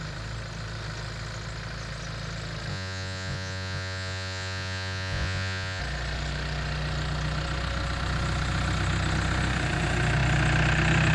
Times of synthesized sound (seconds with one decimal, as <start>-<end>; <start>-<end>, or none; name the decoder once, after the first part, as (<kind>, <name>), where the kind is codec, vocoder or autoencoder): 2.7-5.8 (vocoder, Vocos)